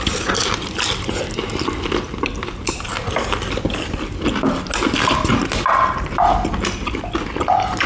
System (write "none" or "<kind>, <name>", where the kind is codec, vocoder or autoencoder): none